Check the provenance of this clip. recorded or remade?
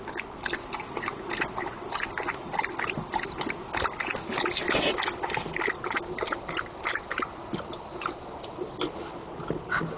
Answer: recorded